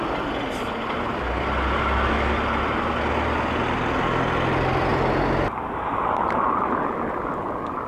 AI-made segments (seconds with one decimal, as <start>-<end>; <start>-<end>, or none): none